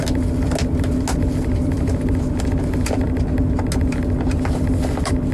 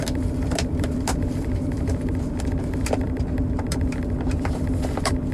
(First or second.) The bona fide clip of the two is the first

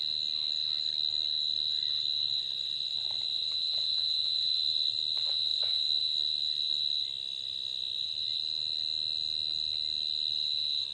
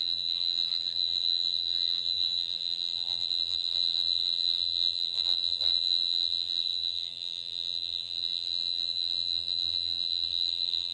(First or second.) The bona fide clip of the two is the first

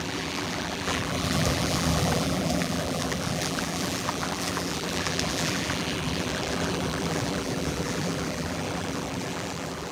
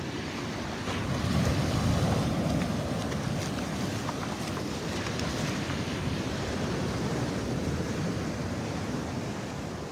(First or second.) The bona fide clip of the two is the second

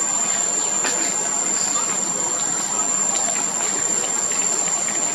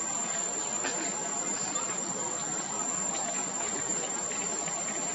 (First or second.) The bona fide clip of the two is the first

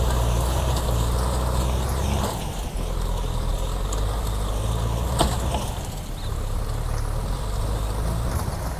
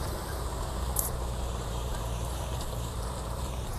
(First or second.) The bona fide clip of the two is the first